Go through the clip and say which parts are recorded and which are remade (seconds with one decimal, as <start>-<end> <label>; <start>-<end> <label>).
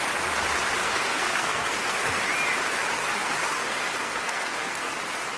0.0-0.8 recorded; 0.8-2.2 remade; 2.2-3.0 recorded; 3.0-4.9 remade; 4.9-5.4 recorded